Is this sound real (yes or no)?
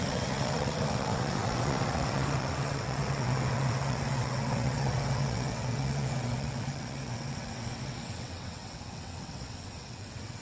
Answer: no